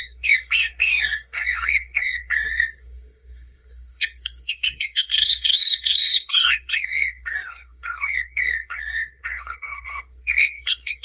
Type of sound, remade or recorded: remade